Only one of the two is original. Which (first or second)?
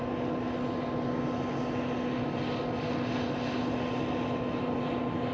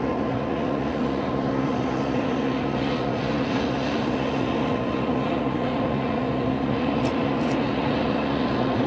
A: first